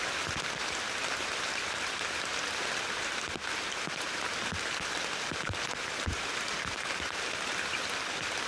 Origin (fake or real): real